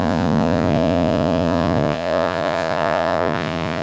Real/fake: fake